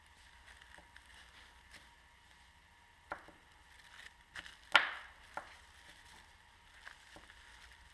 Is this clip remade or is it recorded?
recorded